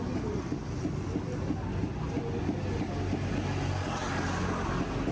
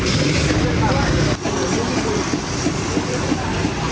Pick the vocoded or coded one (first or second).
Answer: second